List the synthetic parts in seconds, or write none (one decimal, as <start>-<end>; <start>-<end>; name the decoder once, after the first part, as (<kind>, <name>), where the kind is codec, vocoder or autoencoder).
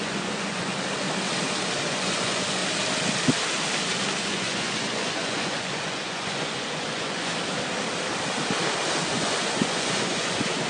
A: 0.0-0.7 (vocoder, Vocos); 1.9-2.6; 4.2-7.3; 9.1-10.7